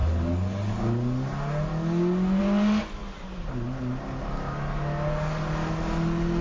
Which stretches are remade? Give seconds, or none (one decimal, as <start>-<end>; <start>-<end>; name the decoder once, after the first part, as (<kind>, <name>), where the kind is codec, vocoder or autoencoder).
none